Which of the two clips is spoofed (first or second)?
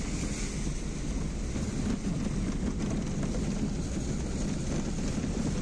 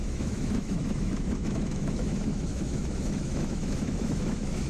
second